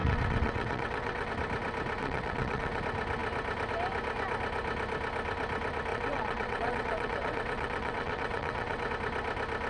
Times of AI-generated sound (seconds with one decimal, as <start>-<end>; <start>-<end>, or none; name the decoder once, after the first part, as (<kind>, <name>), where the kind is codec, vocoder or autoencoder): 0.0-1.3 (vocoder, WaveNeXt); 2.0-2.8; 5.9-8.9